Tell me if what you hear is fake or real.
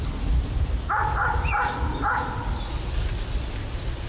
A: real